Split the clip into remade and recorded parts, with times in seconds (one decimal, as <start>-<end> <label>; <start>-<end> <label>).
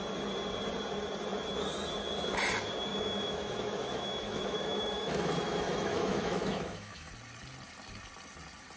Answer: 0.0-2.9 recorded; 2.9-7.1 remade; 7.1-8.8 recorded